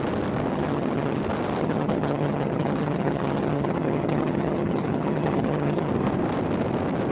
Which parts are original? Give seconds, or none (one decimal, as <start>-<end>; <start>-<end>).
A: 0.0-0.5; 1.2-1.6; 5.9-7.1